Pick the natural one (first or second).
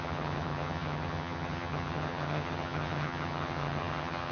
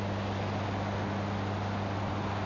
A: second